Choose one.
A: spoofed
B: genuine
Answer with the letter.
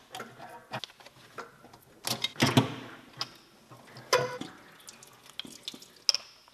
B